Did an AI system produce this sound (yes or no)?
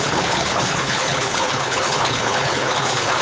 yes